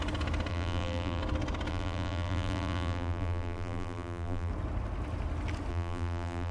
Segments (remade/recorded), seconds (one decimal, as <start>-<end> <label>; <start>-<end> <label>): 0.0-0.5 recorded; 0.5-1.2 remade; 1.2-1.7 recorded; 1.7-4.5 remade; 4.5-5.7 recorded; 5.7-6.5 remade